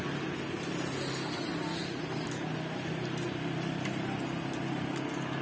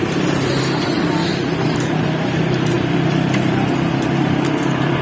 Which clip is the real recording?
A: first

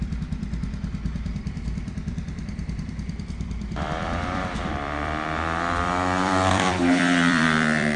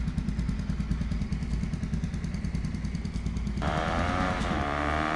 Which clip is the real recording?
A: second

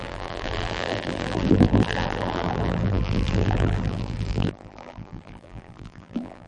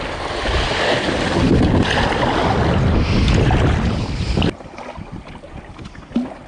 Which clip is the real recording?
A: second